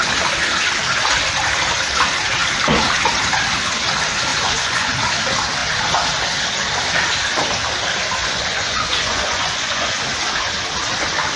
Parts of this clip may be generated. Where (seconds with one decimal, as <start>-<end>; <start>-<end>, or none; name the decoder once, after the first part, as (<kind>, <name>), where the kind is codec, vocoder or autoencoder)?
4.3-4.9 (vocoder, Vocos); 8.2-10.0